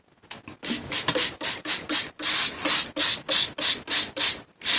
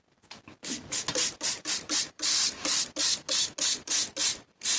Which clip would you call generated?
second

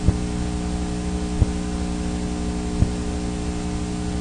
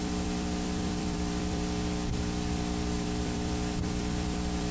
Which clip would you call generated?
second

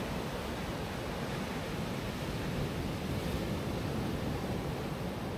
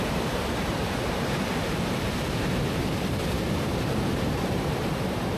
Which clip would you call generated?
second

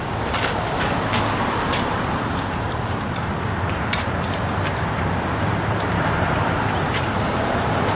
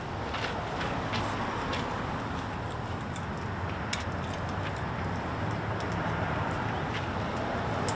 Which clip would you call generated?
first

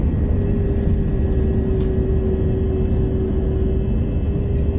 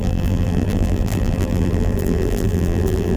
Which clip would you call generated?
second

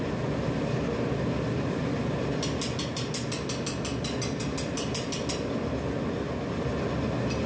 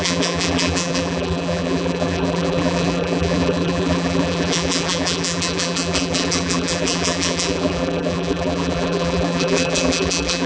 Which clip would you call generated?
second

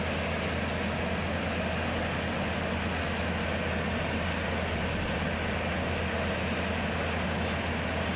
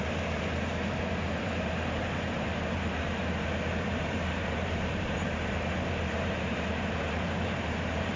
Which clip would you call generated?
second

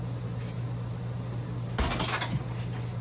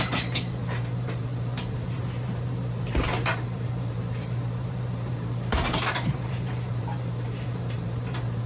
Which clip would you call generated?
second